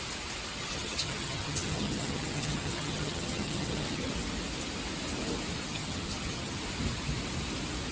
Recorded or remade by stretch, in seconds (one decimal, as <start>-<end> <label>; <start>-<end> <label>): 0.0-0.6 recorded; 0.6-4.1 remade; 4.1-5.7 recorded; 5.7-6.6 remade; 6.6-7.9 recorded